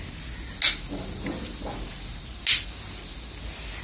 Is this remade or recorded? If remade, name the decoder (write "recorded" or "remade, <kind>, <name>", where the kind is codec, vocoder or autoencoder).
recorded